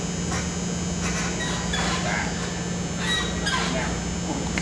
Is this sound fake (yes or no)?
no